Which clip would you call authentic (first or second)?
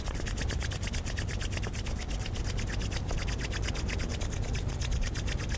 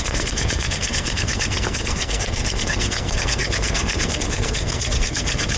first